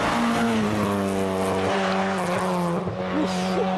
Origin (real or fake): real